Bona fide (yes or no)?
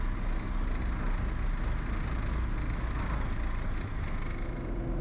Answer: yes